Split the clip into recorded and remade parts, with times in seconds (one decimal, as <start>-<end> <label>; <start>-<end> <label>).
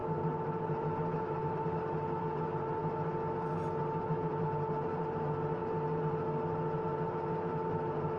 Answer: 0.0-2.8 remade; 2.8-3.8 recorded; 3.8-5.6 remade; 5.6-6.8 recorded; 6.8-8.2 remade